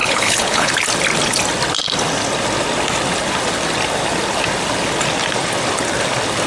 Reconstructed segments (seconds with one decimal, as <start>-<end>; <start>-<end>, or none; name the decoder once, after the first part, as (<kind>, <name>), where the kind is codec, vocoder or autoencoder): 0.0-0.7 (codec, HILCodec)